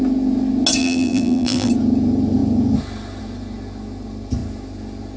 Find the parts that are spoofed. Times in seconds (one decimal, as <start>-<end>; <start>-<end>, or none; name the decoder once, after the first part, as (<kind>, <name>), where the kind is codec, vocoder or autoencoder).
0.8-1.7 (vocoder, BigVGAN v2)